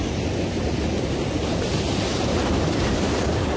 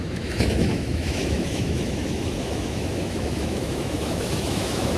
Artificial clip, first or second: second